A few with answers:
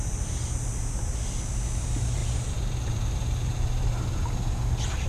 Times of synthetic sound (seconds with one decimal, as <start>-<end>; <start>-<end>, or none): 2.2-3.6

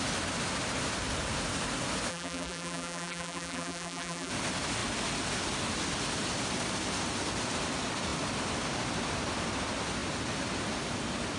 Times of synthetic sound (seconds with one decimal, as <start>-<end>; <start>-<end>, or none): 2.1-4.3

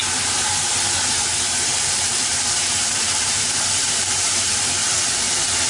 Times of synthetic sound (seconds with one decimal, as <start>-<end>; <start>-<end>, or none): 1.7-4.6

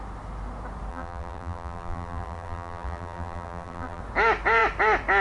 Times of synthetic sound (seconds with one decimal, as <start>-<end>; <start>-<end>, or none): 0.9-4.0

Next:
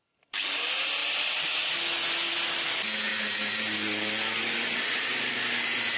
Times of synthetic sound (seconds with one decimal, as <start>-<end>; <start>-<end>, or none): 3.1-5.4

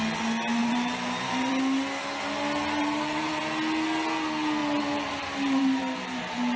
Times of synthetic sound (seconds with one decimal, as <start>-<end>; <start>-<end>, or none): 0.6-1.5; 2.8-3.4; 4.6-6.6

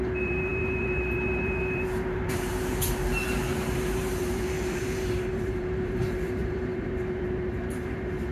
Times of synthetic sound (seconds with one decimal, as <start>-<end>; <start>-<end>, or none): 0.0-8.3